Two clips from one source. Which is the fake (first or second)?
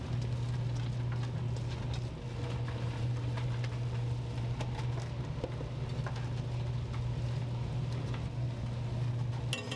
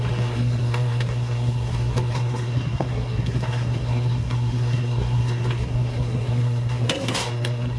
second